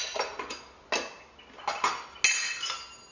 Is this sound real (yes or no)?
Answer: yes